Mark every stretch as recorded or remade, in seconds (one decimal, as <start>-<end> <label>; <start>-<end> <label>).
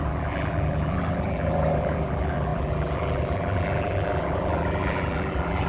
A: 0.0-5.7 remade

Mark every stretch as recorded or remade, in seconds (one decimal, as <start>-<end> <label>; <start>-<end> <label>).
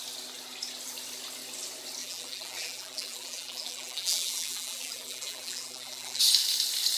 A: 0.0-2.0 recorded; 2.0-6.2 remade; 6.2-7.0 recorded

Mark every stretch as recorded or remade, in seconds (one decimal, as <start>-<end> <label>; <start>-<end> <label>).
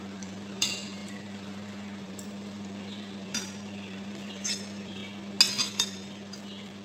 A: 0.0-5.0 remade; 5.0-5.7 recorded; 5.7-6.8 remade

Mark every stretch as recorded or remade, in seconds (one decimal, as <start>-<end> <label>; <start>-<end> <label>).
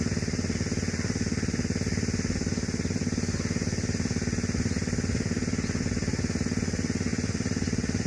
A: 0.0-7.1 recorded; 7.1-8.1 remade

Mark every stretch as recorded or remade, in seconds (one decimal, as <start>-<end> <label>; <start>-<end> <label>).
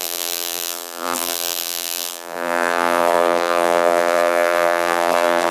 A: 0.0-5.5 remade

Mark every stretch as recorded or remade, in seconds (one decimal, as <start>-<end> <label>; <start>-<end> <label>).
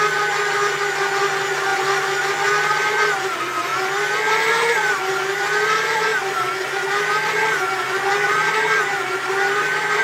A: 0.0-3.7 remade; 3.7-4.5 recorded; 4.5-10.0 remade